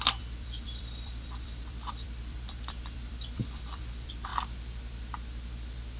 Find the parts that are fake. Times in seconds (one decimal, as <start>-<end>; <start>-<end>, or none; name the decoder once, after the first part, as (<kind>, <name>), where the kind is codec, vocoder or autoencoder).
0.0-4.3 (vocoder, BigVGAN v2)